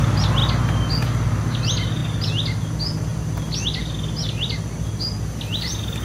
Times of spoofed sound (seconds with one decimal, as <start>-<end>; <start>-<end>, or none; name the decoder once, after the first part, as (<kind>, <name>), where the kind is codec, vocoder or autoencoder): none